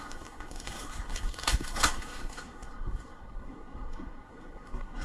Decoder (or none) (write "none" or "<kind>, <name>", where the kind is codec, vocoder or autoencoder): codec, SNAC